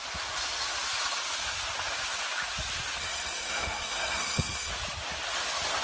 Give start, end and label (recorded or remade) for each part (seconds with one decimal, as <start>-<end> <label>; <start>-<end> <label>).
0.0-3.0 recorded; 3.0-4.7 remade; 4.7-5.8 recorded